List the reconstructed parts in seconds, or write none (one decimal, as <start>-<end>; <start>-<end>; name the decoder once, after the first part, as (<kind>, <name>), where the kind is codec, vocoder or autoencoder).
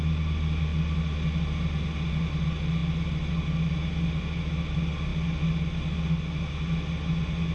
none